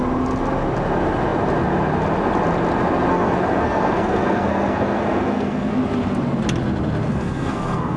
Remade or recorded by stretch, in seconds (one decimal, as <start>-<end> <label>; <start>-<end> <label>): 0.0-3.1 recorded; 3.1-5.7 remade; 5.7-7.1 recorded; 7.1-8.0 remade